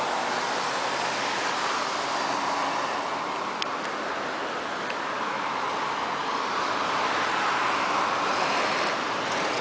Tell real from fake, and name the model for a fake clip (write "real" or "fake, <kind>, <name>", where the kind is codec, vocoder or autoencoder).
real